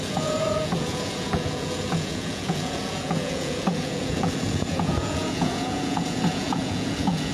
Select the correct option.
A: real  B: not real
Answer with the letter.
B